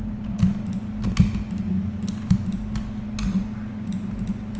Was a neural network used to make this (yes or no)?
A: no